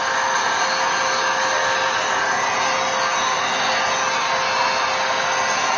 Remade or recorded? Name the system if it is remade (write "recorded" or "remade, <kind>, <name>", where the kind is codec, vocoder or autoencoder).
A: recorded